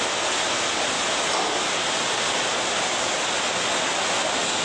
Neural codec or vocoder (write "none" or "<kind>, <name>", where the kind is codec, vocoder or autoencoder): none